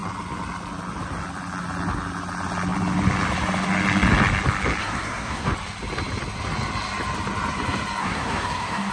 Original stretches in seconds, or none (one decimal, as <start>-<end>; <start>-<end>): 0.0-4.8; 5.5-8.0